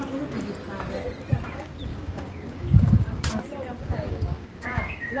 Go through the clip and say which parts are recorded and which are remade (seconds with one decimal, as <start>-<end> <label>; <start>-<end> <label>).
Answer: 0.0-1.9 recorded; 1.9-3.2 remade; 3.2-3.8 recorded; 3.8-5.2 remade

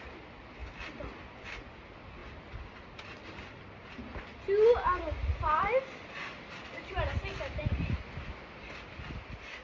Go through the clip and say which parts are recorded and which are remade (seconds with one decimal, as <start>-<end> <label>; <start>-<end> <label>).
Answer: 0.0-9.6 recorded

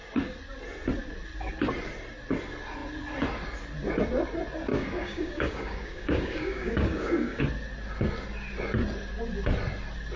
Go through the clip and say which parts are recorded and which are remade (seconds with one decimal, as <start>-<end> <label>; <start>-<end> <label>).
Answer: 0.0-4.7 recorded; 4.7-7.4 remade; 7.4-10.2 recorded

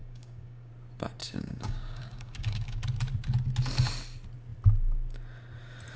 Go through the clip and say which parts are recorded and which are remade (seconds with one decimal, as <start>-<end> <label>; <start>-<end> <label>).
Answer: 0.0-0.7 remade; 0.7-1.2 recorded; 1.2-2.8 remade; 2.8-6.0 recorded

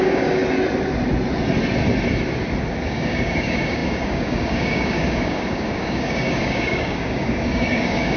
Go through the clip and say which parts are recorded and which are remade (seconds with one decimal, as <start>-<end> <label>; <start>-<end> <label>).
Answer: 0.0-0.4 remade; 0.4-2.8 recorded; 2.8-8.2 remade

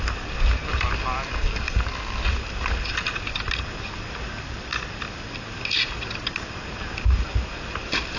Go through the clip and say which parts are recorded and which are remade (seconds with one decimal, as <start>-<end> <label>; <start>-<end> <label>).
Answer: 0.0-8.2 recorded